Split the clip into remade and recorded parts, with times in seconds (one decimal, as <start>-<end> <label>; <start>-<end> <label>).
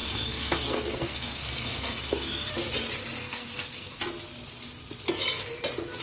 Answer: 0.0-2.5 remade; 2.5-3.2 recorded; 3.2-4.0 remade; 4.0-6.0 recorded